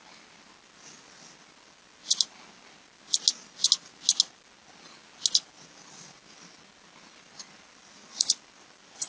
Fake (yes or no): no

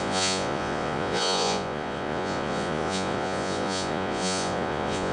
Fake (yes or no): yes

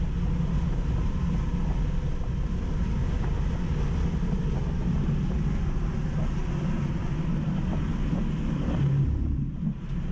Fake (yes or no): no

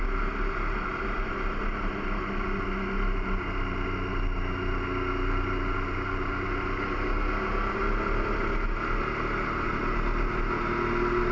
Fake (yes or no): no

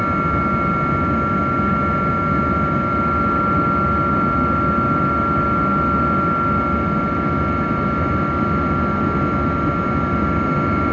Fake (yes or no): no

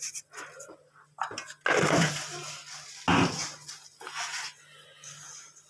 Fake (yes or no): no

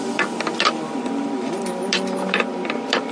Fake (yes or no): no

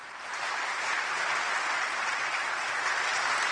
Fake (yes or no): no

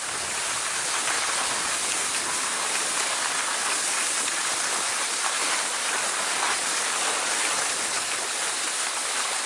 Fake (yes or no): no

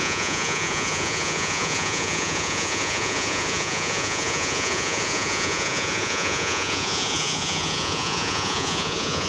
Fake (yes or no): yes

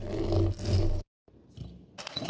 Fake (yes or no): no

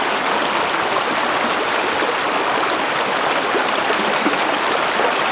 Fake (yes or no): no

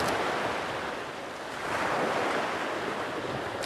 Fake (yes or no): no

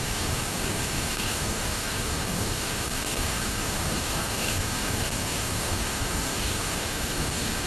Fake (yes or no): yes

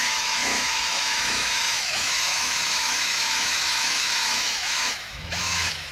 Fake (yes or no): yes